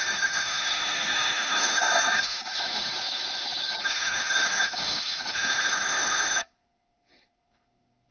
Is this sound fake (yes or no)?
yes